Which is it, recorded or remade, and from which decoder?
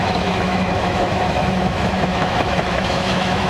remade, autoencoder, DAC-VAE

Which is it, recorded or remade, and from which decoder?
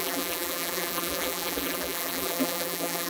remade, vocoder, BigVGAN v2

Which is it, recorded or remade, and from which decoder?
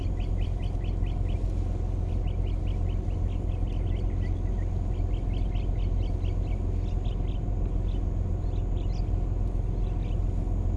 recorded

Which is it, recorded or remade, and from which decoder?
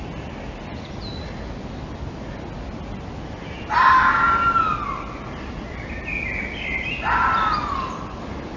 recorded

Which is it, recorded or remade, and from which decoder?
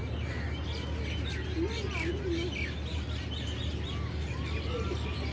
recorded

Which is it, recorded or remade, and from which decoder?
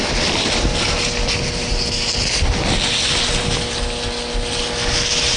recorded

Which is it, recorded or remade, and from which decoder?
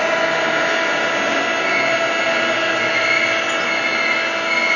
recorded